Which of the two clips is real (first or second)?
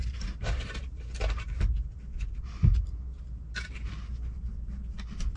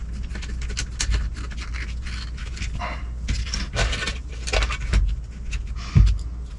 second